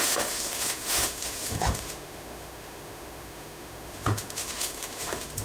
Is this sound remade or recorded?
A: remade